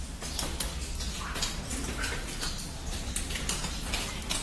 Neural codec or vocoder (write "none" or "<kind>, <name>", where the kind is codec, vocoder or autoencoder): none